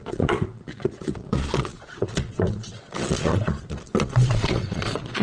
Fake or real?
fake